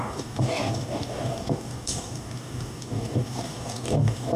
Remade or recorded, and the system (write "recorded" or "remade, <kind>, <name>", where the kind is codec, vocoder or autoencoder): remade, codec, DAC